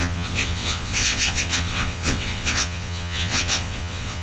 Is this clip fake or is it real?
fake